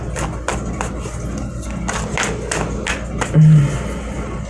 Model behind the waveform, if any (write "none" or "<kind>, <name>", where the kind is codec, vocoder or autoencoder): none